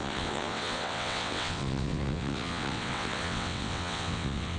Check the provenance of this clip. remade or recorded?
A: remade